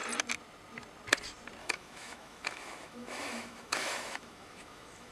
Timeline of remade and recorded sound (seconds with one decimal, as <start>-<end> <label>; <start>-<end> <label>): 0.0-1.6 recorded; 1.6-5.1 remade